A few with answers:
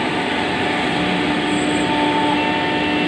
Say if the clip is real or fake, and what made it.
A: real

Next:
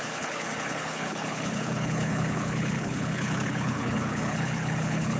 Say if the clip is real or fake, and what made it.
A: fake, codec, HILCodec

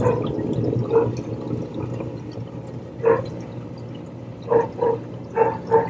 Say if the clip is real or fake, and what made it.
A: real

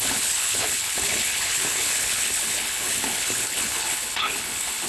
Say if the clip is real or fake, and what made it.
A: fake, codec, HILCodec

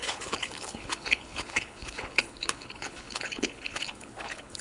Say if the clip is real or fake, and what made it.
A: fake, codec, HILCodec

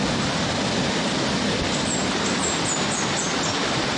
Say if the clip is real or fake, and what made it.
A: real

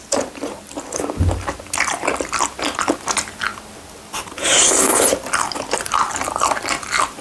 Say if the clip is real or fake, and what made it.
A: real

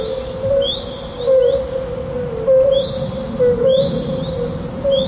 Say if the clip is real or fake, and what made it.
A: real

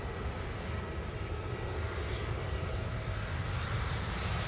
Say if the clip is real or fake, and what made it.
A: real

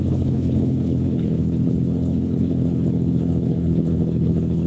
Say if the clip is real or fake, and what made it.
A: fake, codec, HILCodec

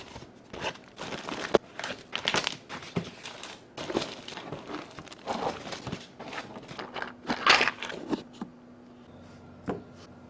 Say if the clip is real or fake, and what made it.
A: real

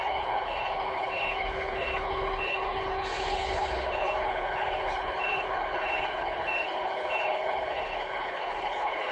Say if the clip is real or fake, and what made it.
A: fake, codec, HILCodec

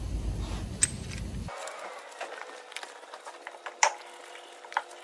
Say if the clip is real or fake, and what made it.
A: real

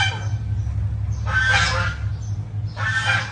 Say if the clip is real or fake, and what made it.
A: real